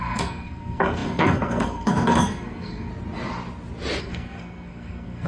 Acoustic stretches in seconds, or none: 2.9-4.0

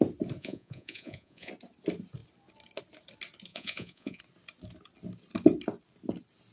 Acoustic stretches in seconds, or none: 0.0-0.4; 1.5-3.5; 4.2-6.5